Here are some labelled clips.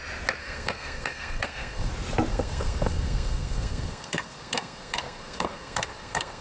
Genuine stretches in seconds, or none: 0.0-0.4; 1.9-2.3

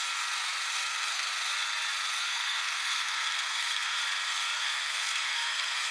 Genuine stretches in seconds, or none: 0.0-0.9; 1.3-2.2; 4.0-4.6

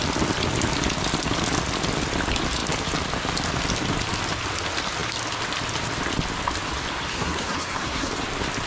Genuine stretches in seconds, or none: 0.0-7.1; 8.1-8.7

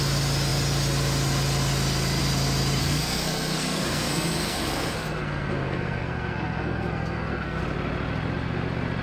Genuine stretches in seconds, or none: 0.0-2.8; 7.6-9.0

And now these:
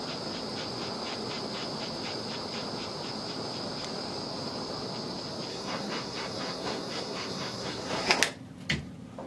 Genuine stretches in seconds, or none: 0.0-5.5; 8.2-9.3